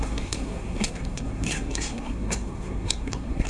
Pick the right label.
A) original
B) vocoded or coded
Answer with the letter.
B